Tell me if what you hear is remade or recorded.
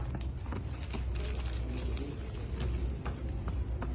recorded